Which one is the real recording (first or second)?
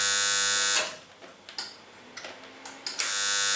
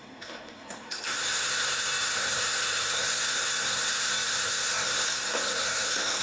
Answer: first